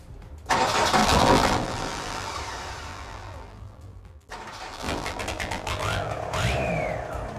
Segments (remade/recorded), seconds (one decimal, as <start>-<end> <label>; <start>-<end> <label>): 0.0-1.0 recorded; 1.0-2.3 remade; 2.3-2.9 recorded; 2.9-4.3 remade; 4.3-4.7 recorded; 4.7-6.1 remade; 6.1-7.4 recorded